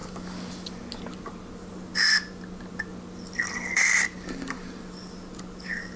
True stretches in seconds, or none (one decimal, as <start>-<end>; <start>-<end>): 0.0-6.0